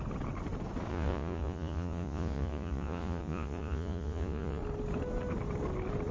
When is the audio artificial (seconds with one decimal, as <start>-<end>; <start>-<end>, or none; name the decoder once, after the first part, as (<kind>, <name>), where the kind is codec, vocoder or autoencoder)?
0.9-4.6 (vocoder, Vocos)